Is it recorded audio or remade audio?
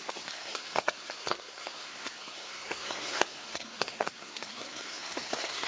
remade